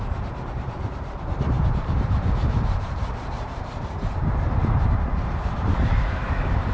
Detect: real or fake fake